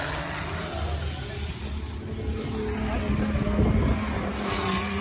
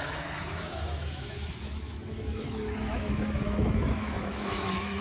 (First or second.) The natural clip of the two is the first